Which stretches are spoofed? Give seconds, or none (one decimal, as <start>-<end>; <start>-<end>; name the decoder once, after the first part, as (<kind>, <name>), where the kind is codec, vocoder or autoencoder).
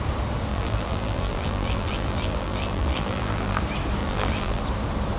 0.5-3.6 (vocoder, BigVGAN v2); 4.0-4.6